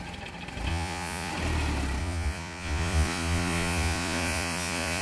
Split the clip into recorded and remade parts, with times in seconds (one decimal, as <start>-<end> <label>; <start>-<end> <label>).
0.0-0.7 recorded; 0.7-1.3 remade; 1.3-2.0 recorded; 2.0-5.0 remade

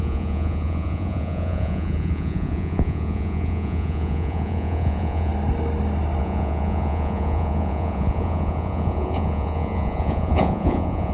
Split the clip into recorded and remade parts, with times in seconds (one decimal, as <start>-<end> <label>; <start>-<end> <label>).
0.0-5.3 remade; 5.3-6.2 recorded; 6.2-11.1 remade

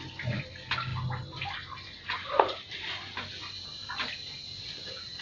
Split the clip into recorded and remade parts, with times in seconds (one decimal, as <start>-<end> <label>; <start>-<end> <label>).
0.0-5.2 recorded